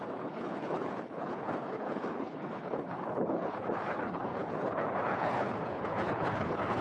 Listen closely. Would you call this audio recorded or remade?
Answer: remade